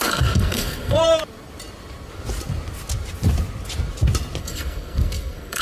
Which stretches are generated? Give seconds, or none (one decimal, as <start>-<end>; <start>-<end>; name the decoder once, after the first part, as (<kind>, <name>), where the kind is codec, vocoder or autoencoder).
0.0-1.0 (codec, SNAC); 4.4-5.6